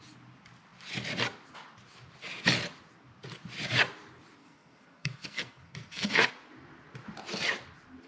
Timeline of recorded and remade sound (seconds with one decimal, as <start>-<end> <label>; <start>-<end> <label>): 0.0-4.4 recorded; 4.4-6.3 remade; 6.3-8.1 recorded